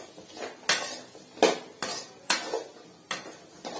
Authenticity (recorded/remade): recorded